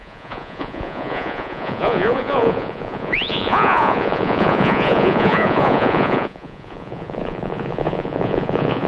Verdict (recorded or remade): remade